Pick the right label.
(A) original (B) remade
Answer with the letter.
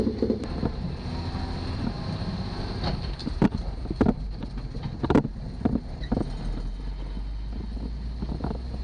A